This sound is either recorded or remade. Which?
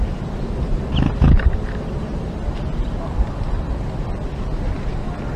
recorded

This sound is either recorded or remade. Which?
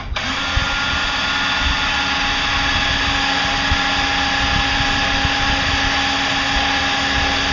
recorded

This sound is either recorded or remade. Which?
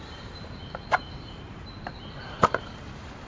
remade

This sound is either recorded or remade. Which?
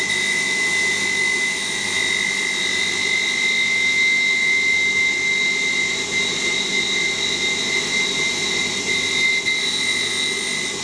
recorded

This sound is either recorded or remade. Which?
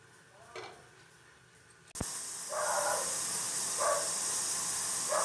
recorded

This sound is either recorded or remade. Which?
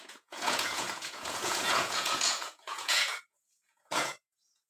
remade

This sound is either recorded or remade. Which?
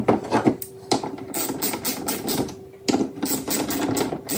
recorded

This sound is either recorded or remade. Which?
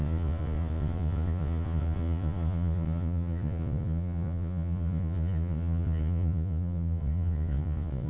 remade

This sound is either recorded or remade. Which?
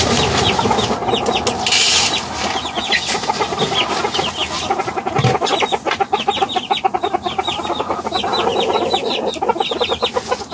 recorded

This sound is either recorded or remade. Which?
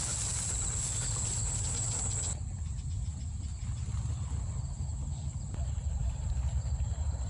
recorded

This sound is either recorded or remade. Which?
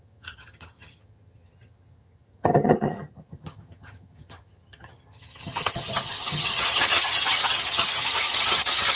remade